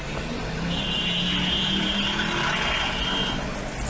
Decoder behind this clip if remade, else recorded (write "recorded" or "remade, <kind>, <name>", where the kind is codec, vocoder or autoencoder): recorded